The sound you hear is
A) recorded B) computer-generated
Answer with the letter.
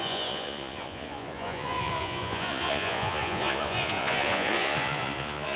B